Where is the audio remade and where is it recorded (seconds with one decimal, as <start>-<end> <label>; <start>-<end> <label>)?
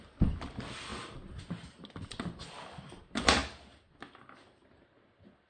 0.0-5.5 recorded